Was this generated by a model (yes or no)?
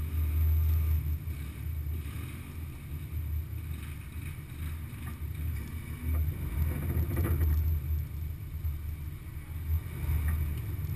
no